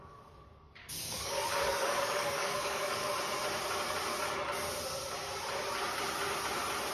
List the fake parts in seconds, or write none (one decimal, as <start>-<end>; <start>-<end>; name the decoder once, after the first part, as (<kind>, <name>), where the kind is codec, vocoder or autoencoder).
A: 0.0-3.1 (codec, DAC)